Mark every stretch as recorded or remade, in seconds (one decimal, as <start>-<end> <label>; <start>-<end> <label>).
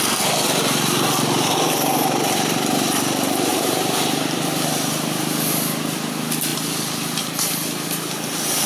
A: 0.0-3.5 recorded; 3.5-4.4 remade; 4.4-8.7 recorded